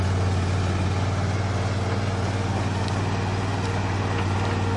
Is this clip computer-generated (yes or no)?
no